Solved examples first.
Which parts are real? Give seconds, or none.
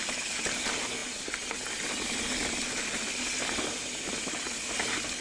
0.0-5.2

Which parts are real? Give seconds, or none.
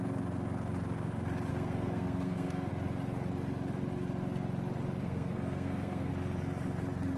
0.0-1.5; 2.7-5.0; 6.1-7.2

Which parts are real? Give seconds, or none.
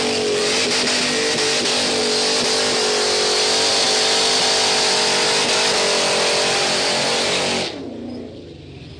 0.0-9.0